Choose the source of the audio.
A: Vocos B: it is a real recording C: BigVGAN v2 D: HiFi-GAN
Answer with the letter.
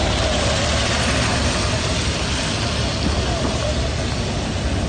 B